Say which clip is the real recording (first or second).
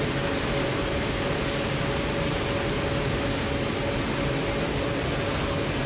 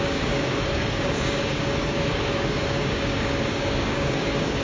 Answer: first